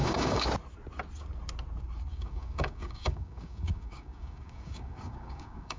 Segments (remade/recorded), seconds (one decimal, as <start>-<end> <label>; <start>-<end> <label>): 0.0-0.5 remade; 0.5-2.1 recorded; 2.1-5.8 remade